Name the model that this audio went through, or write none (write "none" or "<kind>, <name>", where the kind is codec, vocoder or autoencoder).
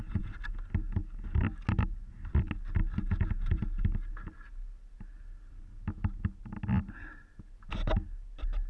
none